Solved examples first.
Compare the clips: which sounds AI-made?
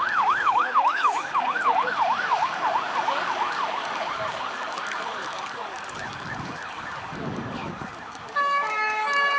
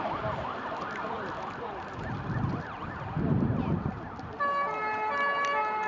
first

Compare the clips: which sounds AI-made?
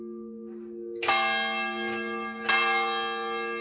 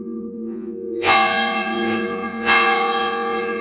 second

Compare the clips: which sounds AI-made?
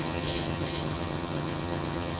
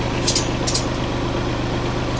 first